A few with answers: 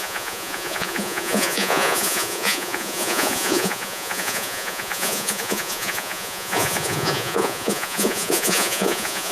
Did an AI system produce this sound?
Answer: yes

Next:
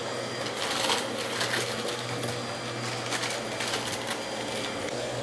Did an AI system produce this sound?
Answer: no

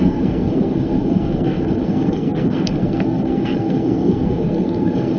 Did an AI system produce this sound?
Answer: yes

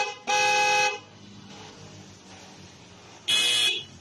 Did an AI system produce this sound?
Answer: no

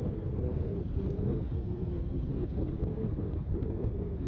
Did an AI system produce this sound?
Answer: yes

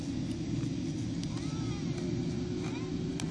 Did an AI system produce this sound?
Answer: no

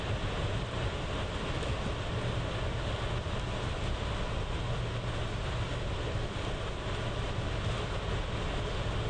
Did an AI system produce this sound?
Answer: no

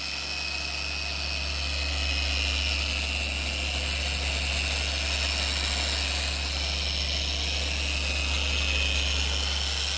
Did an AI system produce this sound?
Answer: no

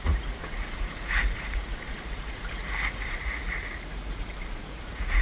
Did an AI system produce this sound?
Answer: yes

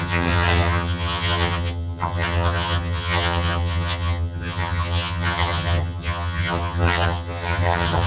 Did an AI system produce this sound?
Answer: yes